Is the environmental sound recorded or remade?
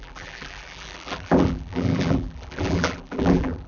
remade